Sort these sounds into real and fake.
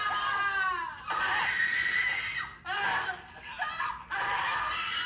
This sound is real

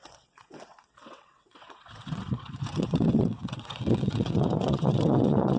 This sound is fake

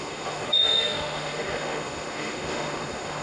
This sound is fake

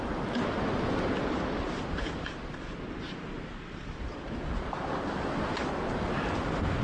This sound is real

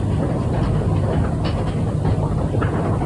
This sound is real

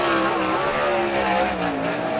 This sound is real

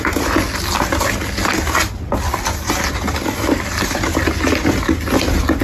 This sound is real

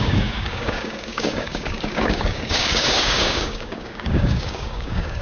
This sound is fake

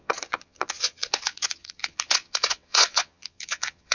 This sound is fake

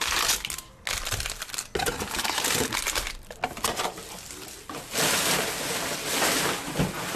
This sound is real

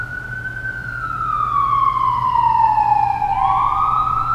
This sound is real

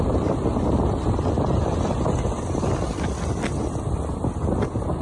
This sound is real